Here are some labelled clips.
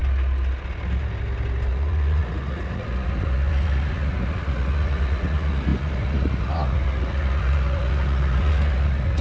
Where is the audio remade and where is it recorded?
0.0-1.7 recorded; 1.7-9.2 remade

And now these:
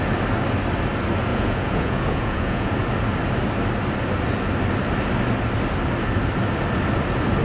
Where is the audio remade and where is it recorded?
0.0-1.3 recorded; 1.3-2.7 remade; 2.7-7.4 recorded

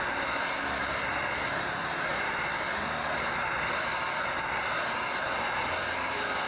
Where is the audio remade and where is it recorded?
0.0-6.5 recorded

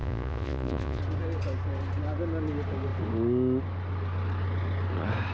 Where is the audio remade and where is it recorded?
0.0-1.0 remade; 1.0-5.3 recorded

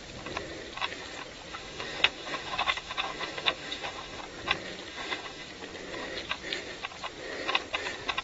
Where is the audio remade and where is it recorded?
0.0-1.5 recorded; 1.5-4.2 remade; 4.2-4.9 recorded; 4.9-5.5 remade; 5.5-8.2 recorded

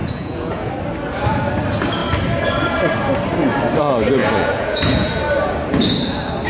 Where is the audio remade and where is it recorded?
0.0-0.7 remade; 0.7-4.2 recorded; 4.2-5.2 remade; 5.2-6.5 recorded

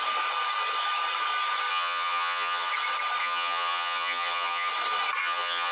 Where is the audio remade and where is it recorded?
0.0-1.7 recorded; 1.7-2.7 remade; 2.7-3.2 recorded; 3.2-4.7 remade; 4.7-5.2 recorded; 5.2-5.7 remade

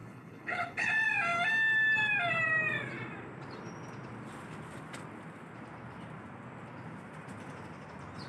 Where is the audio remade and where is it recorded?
0.0-0.9 remade; 0.9-8.3 recorded